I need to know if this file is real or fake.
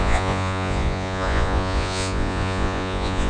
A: fake